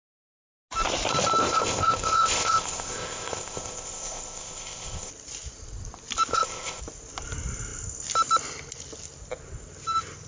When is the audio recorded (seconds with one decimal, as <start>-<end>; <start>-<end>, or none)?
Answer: 0.0-1.4; 5.1-6.3; 6.8-10.3